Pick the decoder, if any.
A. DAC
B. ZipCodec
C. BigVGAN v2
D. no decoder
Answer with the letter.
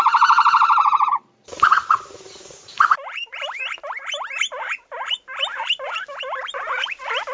C